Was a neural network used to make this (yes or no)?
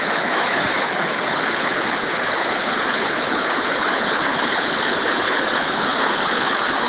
yes